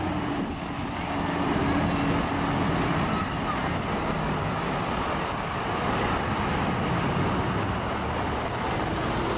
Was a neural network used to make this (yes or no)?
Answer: no